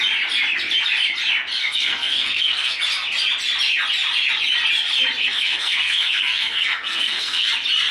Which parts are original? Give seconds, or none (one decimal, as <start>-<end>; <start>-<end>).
0.0-1.6; 2.8-5.2; 7.5-7.9